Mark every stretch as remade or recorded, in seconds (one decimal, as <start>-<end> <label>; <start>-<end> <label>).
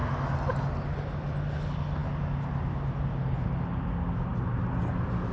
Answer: 0.0-5.3 recorded